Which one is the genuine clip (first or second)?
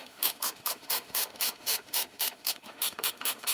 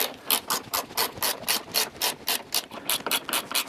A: second